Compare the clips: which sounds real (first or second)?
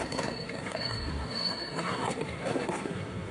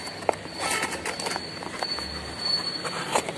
second